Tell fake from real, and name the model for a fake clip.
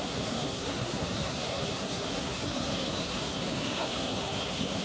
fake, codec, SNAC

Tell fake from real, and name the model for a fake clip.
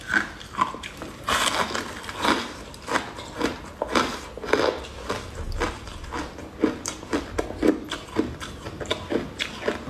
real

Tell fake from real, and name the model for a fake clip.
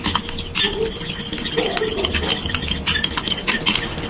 real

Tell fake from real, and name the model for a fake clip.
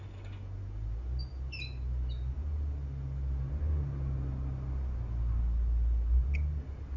real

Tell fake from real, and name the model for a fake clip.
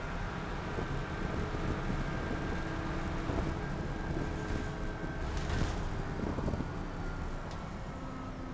real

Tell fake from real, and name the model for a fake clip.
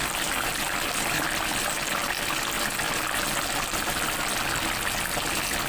real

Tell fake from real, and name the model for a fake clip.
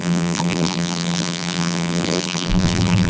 fake, vocoder, BigVGAN v2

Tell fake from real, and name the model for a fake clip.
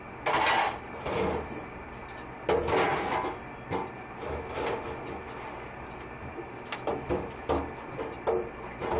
real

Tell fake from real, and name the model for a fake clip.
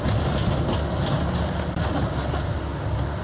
real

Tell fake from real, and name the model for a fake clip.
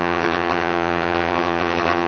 fake, vocoder, HiFi-GAN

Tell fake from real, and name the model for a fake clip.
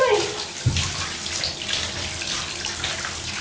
real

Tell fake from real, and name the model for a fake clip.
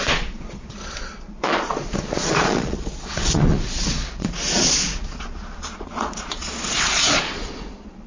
fake, vocoder, Vocos